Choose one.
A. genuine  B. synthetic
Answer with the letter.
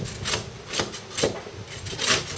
A